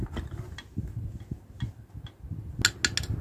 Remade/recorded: recorded